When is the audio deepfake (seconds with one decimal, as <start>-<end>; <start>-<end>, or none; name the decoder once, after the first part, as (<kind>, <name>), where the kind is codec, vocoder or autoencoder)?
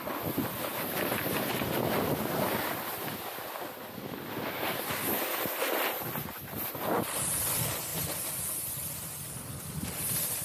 none